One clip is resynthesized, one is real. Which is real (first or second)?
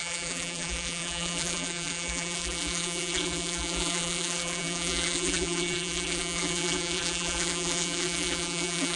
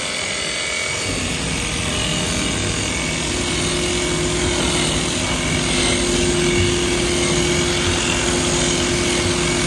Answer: second